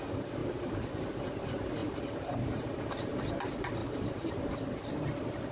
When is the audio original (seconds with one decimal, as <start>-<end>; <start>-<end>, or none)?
0.0-0.4; 1.0-1.8; 3.4-3.8; 4.6-5.5